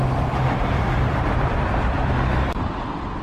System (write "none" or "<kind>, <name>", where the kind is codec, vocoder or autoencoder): vocoder, BigVGAN v2